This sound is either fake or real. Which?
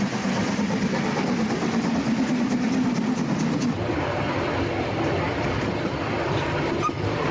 real